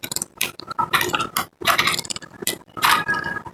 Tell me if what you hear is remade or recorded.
remade